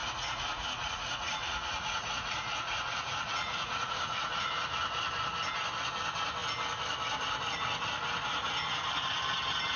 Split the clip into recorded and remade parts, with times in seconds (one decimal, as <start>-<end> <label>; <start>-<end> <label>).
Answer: 0.0-4.5 remade; 4.5-9.8 recorded